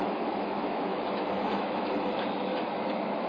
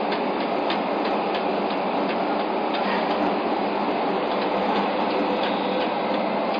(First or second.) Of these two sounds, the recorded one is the second